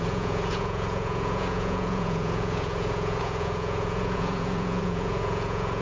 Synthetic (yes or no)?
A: yes